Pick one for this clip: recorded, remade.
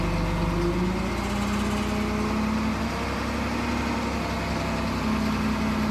recorded